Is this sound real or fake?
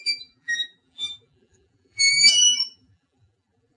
fake